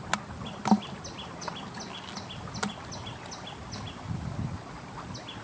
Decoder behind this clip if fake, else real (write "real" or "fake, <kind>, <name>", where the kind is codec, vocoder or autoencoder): real